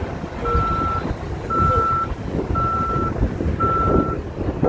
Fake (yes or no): no